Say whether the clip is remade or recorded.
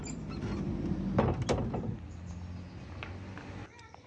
recorded